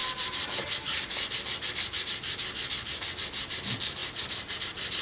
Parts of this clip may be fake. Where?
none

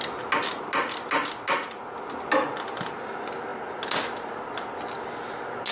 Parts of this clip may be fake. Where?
none